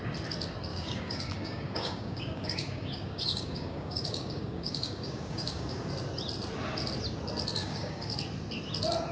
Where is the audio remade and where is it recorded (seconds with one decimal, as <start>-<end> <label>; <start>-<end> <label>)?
0.0-0.7 recorded; 0.7-5.9 remade; 5.9-7.6 recorded; 7.6-8.1 remade; 8.1-9.1 recorded